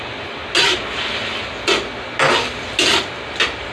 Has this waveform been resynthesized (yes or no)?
no